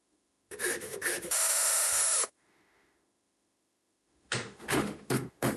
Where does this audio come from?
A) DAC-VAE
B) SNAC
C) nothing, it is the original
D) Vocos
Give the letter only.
A